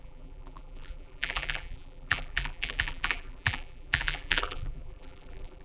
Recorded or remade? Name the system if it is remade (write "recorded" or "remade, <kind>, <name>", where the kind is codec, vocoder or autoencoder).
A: remade, vocoder, BigVGAN v2